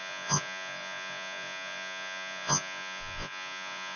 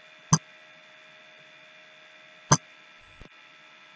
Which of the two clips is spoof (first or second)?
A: first